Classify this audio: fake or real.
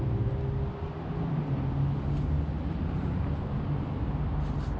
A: real